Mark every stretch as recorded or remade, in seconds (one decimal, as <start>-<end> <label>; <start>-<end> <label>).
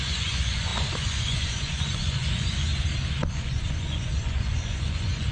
0.0-2.7 remade; 2.7-3.3 recorded; 3.3-5.3 remade